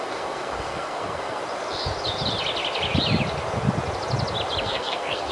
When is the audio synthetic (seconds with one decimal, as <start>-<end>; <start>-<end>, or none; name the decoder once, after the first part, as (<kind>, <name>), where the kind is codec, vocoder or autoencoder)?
0.0-1.4 (codec, SNAC); 4.6-5.3